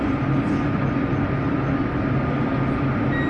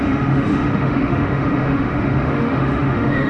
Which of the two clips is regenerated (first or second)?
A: second